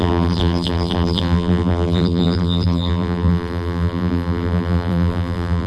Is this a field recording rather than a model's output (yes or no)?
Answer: no